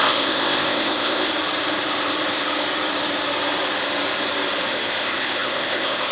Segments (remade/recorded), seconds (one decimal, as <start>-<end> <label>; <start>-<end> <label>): 0.0-1.3 remade; 1.3-4.7 recorded; 4.7-6.1 remade